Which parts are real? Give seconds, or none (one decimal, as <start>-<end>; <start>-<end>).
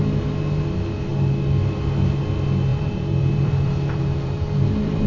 0.0-2.7